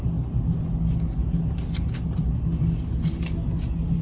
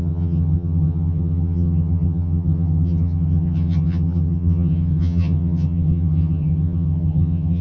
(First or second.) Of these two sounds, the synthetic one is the second